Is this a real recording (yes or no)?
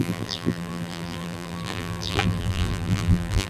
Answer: no